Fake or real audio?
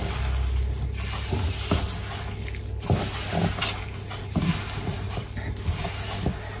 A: real